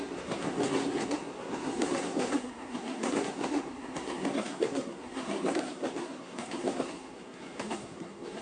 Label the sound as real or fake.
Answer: fake